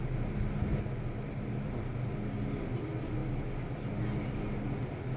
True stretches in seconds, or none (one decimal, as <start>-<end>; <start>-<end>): 0.0-5.2